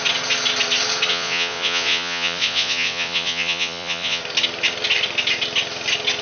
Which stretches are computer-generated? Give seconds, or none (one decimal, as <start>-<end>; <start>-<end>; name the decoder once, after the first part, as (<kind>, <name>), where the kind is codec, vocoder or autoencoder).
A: 1.1-4.2 (vocoder, Vocos)